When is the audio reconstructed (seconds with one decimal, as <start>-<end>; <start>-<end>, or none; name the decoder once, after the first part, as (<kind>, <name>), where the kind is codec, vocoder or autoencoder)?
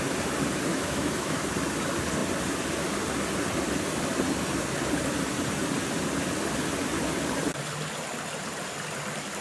0.7-1.4 (autoencoder, DAC-VAE)